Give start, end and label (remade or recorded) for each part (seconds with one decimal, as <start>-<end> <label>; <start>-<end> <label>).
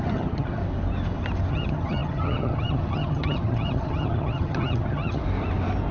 0.0-0.6 remade; 0.6-1.5 recorded; 1.5-5.2 remade; 5.2-5.9 recorded